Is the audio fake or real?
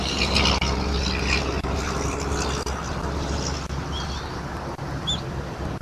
real